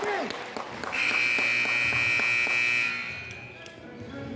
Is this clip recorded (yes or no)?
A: yes